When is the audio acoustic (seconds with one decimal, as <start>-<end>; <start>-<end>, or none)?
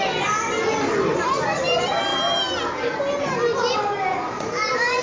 0.0-5.0